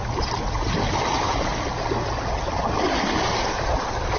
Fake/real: real